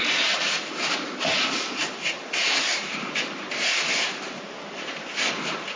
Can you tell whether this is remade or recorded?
remade